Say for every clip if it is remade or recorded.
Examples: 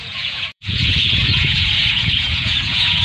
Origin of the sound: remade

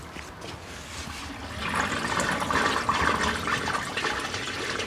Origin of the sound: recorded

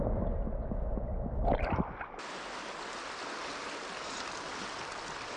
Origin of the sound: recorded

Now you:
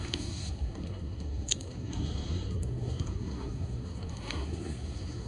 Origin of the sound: remade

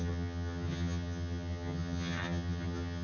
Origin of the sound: remade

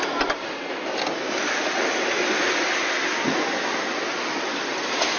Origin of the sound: recorded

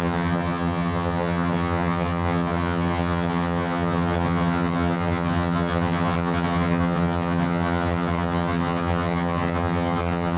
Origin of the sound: remade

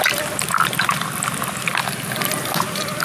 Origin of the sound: recorded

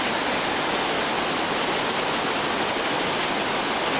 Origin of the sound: recorded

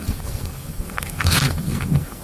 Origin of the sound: remade